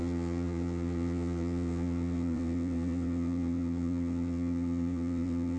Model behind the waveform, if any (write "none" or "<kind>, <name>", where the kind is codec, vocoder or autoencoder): vocoder, Vocos